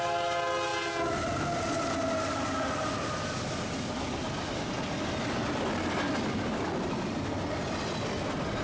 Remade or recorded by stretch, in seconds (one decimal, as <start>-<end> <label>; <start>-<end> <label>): 0.0-8.6 recorded